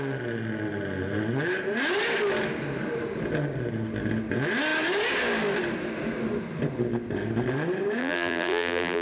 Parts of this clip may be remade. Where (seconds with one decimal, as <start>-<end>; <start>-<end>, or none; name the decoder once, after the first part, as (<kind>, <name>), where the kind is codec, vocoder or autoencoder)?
8.0-9.0 (vocoder, BigVGAN v2)